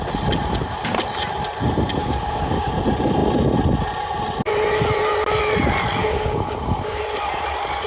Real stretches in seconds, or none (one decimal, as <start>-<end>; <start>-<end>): 0.0-2.0; 2.7-6.0; 7.0-7.9